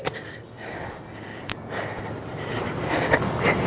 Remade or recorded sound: recorded